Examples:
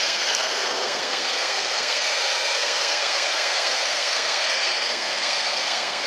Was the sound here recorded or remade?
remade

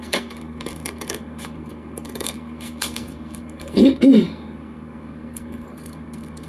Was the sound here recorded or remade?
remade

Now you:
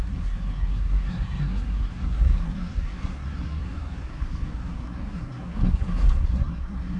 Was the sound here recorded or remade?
remade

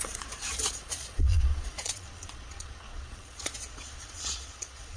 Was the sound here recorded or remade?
remade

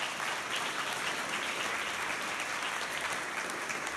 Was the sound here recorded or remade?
recorded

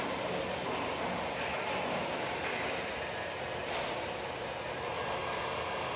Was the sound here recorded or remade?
recorded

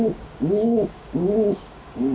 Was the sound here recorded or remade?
remade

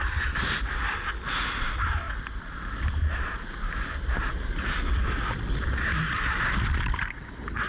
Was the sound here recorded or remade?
recorded